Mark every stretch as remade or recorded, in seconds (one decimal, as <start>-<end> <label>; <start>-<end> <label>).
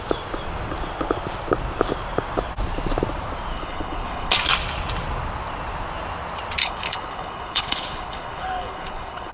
0.0-3.5 recorded; 3.5-4.3 remade; 4.3-6.6 recorded; 6.6-9.3 remade